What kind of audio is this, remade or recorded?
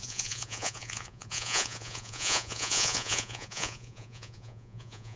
remade